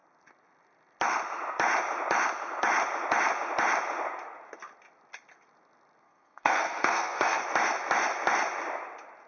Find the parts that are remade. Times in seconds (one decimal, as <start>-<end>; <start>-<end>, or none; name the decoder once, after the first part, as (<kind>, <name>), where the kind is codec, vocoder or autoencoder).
6.0-7.4 (codec, SNAC)